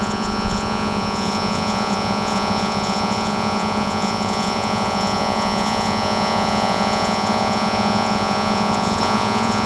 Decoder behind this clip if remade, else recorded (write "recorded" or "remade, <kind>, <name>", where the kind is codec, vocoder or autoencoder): remade, vocoder, Vocos